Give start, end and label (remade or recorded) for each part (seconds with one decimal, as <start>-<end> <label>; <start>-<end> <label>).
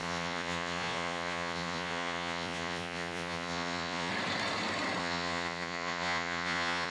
0.0-4.1 remade; 4.1-5.0 recorded; 5.0-6.9 remade